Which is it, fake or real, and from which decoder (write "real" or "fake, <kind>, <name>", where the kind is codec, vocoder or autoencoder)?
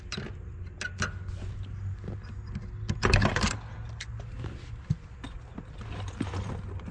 real